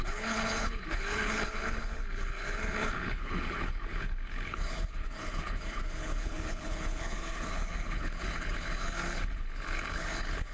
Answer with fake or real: fake